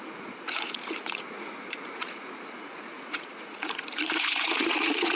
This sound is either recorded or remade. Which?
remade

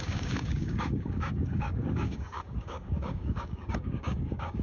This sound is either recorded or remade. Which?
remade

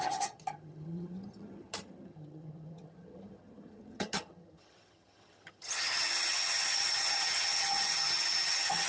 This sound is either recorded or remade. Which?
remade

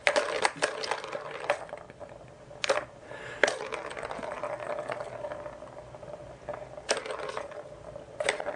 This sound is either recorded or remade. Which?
recorded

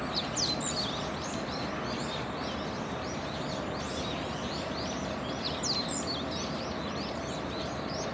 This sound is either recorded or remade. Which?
recorded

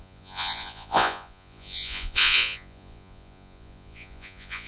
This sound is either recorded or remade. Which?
remade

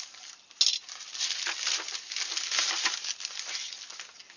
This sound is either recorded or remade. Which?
recorded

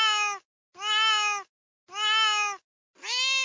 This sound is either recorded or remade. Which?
recorded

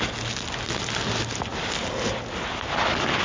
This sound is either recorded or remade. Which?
recorded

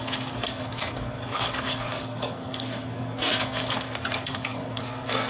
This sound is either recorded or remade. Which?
remade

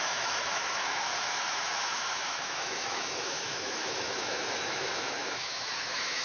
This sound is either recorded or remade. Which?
remade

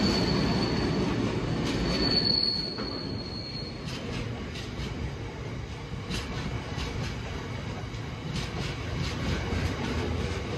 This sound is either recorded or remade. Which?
recorded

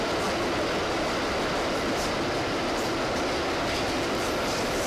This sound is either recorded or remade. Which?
recorded